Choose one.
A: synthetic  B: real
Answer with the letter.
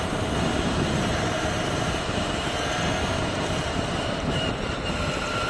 A